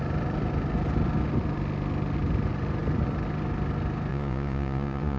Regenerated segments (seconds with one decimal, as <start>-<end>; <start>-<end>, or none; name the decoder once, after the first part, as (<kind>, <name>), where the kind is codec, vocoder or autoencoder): 4.1-5.2 (vocoder, Vocos)